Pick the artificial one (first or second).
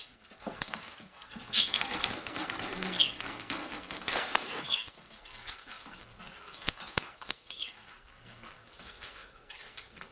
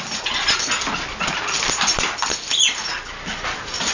first